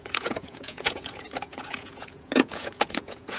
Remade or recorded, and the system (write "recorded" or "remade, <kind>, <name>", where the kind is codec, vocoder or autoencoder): remade, vocoder, Vocos